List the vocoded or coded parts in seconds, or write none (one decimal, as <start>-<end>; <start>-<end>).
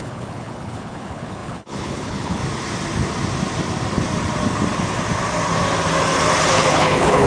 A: 0.0-2.4; 6.5-7.3